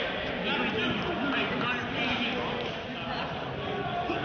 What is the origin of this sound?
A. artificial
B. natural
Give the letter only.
B